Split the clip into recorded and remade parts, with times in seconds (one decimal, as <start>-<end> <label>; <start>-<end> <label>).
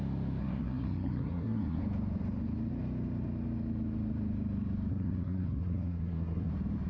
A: 0.0-0.4 recorded; 0.4-1.8 remade; 1.8-4.9 recorded; 4.9-6.5 remade; 6.5-6.9 recorded